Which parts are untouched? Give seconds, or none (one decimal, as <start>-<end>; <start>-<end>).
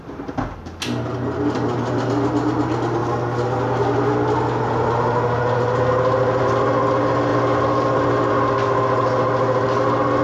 0.0-10.2